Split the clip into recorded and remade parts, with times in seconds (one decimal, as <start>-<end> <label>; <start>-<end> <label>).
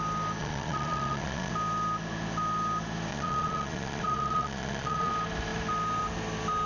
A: 0.0-0.4 recorded; 0.4-1.5 remade; 1.5-3.1 recorded; 3.1-5.1 remade; 5.1-6.7 recorded